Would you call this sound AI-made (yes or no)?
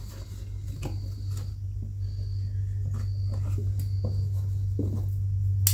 no